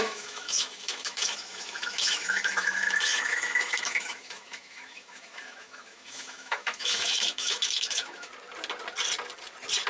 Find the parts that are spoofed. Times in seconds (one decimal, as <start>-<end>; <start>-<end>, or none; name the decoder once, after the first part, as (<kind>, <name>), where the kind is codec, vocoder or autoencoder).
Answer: 0.0-8.3 (autoencoder, DAC-VAE)

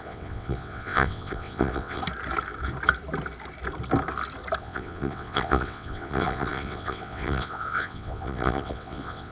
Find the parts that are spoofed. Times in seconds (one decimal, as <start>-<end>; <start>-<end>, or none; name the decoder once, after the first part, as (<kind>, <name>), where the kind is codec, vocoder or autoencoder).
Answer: 0.0-2.0 (vocoder, WaveNeXt); 4.6-9.3

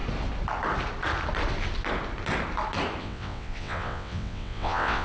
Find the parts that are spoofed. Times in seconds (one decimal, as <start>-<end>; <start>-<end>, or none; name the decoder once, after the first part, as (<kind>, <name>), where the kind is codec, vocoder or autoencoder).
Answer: 3.0-5.0 (vocoder, WaveNeXt)

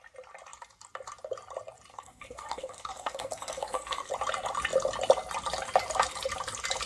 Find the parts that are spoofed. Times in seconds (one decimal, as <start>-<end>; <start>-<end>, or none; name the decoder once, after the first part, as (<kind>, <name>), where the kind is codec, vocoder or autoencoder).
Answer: 1.9-4.1 (codec, SNAC)